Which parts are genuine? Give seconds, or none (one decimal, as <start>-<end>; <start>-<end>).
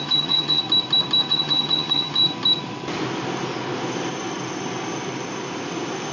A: 0.6-1.3; 2.2-6.1